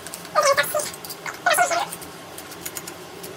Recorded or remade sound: remade